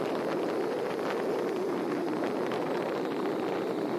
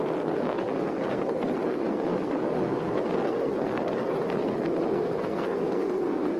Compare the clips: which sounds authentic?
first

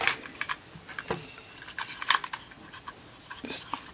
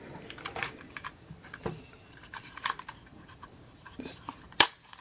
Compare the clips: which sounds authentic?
first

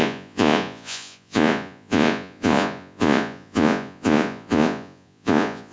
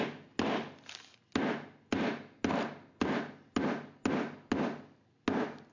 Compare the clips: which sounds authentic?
second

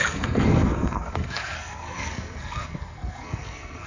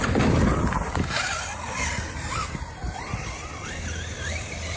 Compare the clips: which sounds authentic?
second